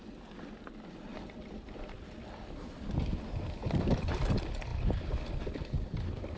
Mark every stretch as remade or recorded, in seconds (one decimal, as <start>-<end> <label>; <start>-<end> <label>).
0.0-1.1 recorded; 1.1-3.0 remade; 3.0-4.7 recorded; 4.7-5.3 remade; 5.3-6.4 recorded